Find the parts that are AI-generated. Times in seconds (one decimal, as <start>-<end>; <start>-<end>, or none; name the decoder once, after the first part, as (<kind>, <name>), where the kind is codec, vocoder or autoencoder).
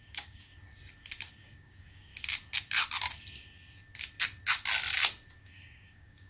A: 0.0-0.5 (codec, DAC); 1.3-2.1; 5.4-6.3